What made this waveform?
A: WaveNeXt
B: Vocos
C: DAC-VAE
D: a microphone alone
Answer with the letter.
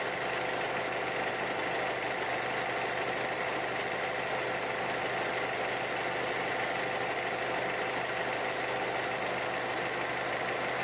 D